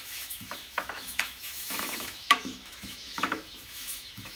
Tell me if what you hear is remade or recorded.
remade